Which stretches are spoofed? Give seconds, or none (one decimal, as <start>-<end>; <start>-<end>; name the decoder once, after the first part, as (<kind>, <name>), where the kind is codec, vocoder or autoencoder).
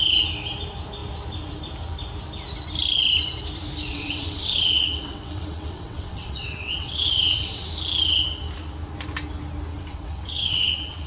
3.9-7.7 (vocoder, WaveNeXt); 9.7-11.1